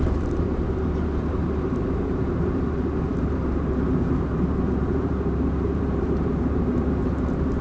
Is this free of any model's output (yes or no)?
no